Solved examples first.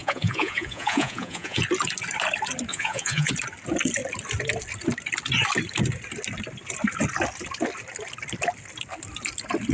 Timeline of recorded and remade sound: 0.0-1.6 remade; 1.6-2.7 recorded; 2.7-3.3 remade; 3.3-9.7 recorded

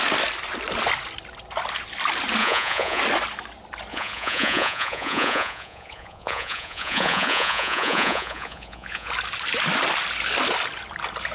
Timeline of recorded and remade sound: 0.0-2.4 recorded; 2.4-3.0 remade; 3.0-3.9 recorded; 3.9-9.1 remade; 9.1-11.3 recorded